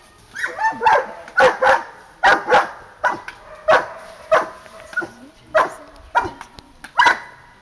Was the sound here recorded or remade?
recorded